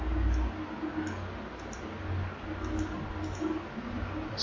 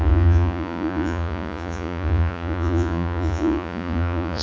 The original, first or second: first